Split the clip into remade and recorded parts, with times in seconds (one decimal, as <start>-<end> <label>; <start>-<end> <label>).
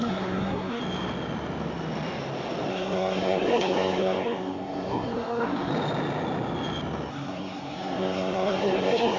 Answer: 0.0-0.8 remade; 0.8-2.7 recorded; 2.7-5.7 remade; 5.7-7.1 recorded; 7.1-9.2 remade